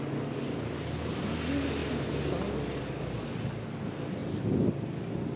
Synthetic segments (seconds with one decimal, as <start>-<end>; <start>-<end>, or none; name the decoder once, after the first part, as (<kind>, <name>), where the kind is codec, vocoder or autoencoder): none